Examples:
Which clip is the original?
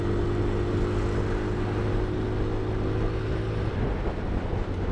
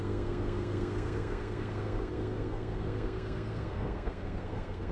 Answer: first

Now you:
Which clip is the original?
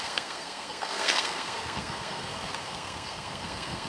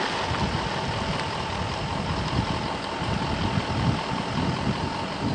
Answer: second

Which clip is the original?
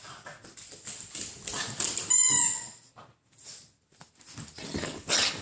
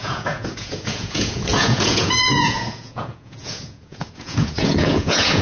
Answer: first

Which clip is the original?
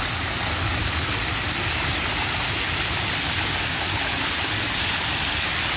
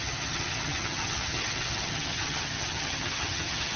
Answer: first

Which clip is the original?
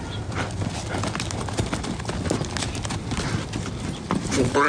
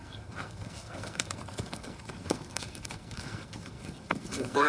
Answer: first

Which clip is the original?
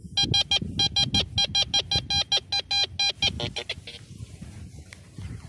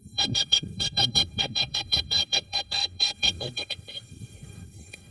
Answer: first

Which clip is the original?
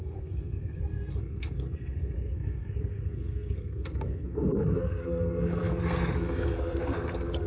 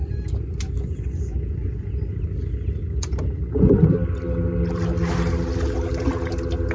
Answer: second